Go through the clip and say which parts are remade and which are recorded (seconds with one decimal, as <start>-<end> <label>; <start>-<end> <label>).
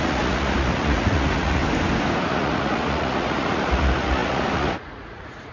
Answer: 0.0-1.6 remade; 1.6-2.3 recorded; 2.3-5.5 remade